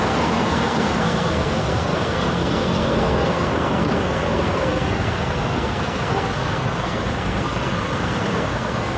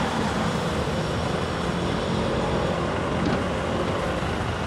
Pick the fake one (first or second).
first